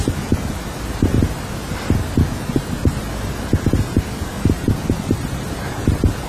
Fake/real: real